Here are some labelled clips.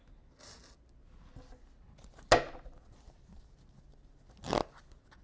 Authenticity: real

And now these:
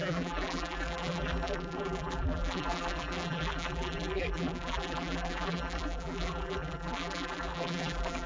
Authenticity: fake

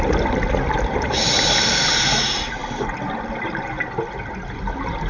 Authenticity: real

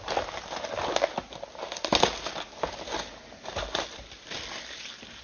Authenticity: real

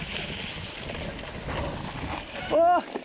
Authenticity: real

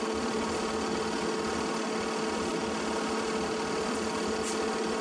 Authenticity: real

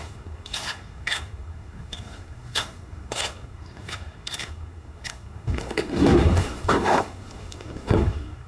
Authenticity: fake